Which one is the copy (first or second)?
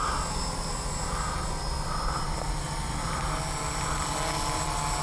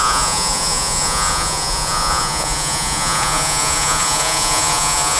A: second